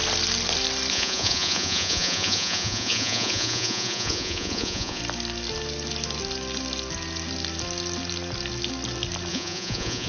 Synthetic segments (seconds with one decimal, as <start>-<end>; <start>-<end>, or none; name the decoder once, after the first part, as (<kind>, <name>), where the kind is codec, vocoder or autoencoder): 0.9-5.0 (vocoder, Vocos); 9.3-10.1